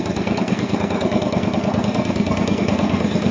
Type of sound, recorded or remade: remade